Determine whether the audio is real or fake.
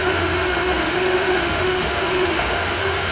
fake